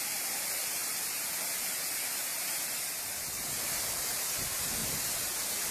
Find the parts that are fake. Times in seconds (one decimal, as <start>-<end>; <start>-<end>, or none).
0.0-0.8; 2.9-4.8